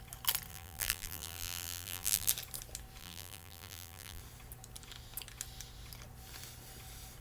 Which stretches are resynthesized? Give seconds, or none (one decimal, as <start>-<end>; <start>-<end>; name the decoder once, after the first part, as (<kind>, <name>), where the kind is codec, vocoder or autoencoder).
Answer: 0.5-2.3 (vocoder, BigVGAN v2); 3.0-4.2